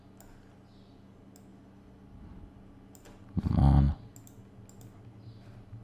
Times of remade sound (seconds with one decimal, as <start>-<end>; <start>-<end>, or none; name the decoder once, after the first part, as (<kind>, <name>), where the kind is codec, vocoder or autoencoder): none